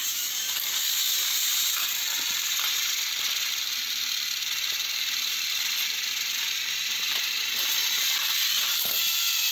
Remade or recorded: remade